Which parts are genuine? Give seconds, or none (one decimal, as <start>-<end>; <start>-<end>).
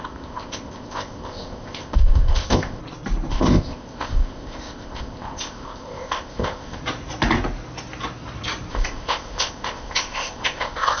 2.8-3.3; 6.8-8.7